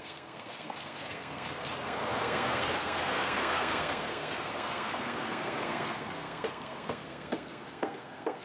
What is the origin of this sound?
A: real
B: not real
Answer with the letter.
B